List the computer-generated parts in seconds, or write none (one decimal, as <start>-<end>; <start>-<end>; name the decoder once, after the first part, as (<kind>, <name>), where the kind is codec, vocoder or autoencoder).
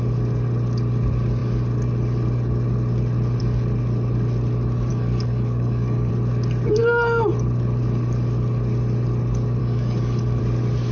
4.9-6.1 (codec, DAC); 9.6-10.4